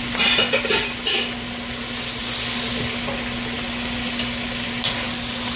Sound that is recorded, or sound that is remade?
recorded